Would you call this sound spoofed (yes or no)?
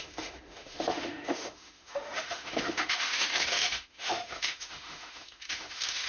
yes